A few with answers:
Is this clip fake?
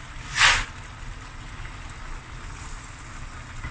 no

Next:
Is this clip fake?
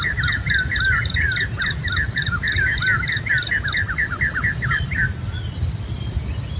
no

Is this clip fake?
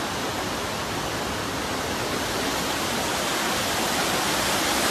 no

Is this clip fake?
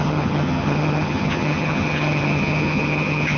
yes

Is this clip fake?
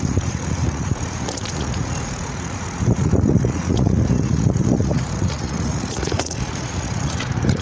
yes